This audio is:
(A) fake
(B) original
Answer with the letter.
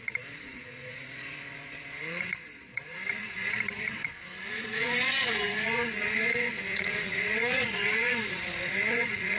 A